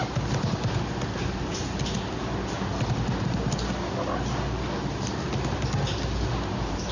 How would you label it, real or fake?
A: real